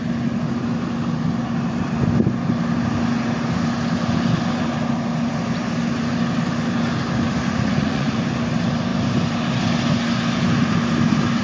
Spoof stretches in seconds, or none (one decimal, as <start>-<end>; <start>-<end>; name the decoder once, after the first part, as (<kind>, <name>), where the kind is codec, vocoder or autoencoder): 7.4-8.2 (vocoder, Vocos)